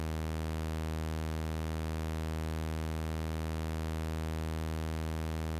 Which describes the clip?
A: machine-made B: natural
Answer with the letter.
B